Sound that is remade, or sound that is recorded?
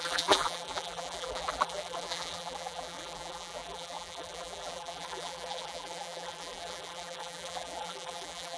remade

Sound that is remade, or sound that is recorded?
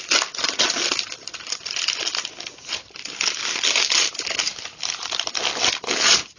recorded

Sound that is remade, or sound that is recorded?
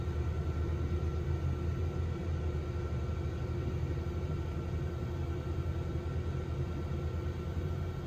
recorded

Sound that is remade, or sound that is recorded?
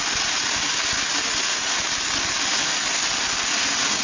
recorded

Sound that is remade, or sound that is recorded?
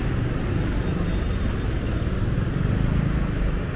recorded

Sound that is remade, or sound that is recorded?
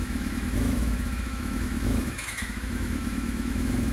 remade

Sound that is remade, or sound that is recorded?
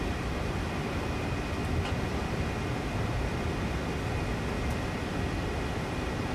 recorded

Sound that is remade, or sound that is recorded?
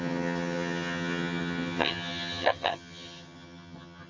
remade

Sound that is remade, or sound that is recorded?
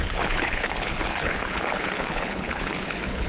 remade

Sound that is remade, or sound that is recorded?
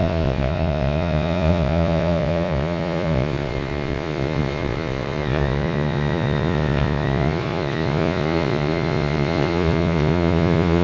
remade